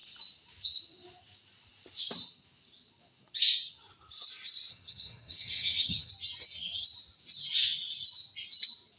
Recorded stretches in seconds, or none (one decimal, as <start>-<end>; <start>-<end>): 0.0-4.7; 6.1-9.0